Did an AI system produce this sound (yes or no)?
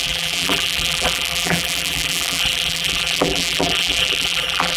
yes